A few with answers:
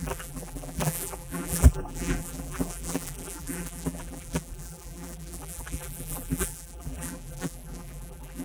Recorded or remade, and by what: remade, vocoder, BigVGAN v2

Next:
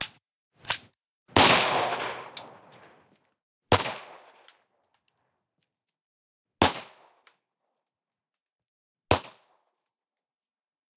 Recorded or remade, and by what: recorded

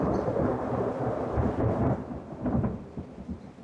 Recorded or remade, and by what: remade, vocoder, BigVGAN v2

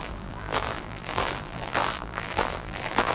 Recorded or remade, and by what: remade, vocoder, BigVGAN v2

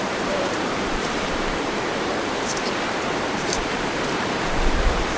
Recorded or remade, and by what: remade, vocoder, BigVGAN v2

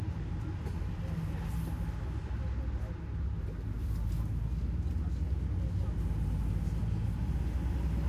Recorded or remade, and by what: recorded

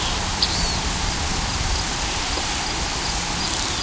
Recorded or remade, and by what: remade, vocoder, BigVGAN v2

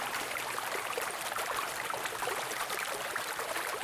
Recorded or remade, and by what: remade, vocoder, BigVGAN v2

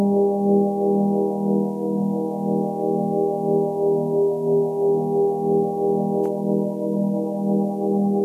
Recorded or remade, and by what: recorded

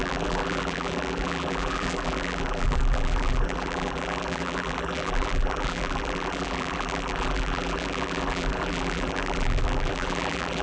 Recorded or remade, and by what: remade, vocoder, BigVGAN v2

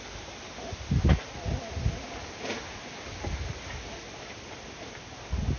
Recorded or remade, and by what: recorded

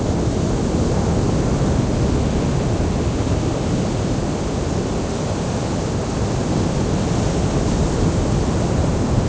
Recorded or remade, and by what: recorded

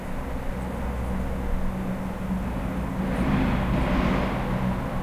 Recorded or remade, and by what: recorded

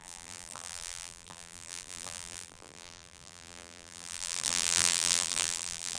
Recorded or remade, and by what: remade, vocoder, BigVGAN v2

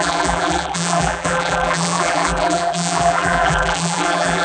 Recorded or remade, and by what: remade, vocoder, BigVGAN v2